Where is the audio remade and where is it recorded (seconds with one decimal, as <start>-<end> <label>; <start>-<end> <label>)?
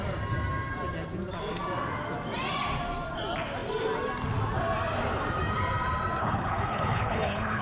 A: 0.0-6.2 recorded; 6.2-7.6 remade